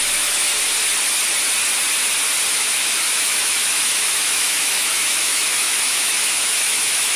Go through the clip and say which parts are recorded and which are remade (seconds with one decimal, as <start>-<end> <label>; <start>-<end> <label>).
0.0-0.5 remade; 0.5-2.5 recorded; 2.5-7.2 remade